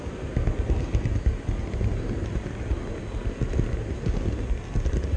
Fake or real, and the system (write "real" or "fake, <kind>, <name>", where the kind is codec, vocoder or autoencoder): real